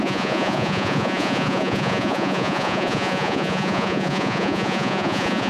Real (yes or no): no